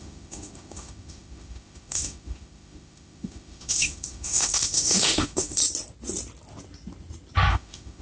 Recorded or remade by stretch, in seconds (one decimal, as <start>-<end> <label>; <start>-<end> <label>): 0.0-5.6 remade; 5.6-7.5 recorded; 7.5-8.0 remade